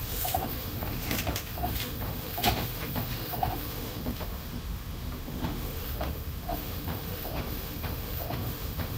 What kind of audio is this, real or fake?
fake